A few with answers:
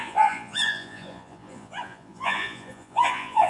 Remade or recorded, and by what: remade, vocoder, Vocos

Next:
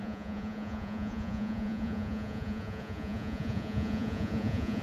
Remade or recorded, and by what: remade, vocoder, Vocos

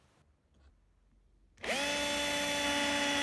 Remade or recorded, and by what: recorded